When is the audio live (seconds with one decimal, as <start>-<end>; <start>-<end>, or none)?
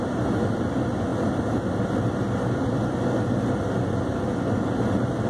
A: 0.0-5.3